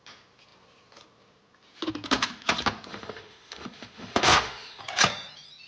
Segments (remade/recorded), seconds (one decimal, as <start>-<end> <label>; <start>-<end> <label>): 0.0-2.9 recorded; 2.9-4.8 remade; 4.8-5.7 recorded